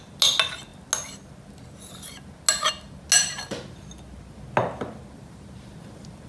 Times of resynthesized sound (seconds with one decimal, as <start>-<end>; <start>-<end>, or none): none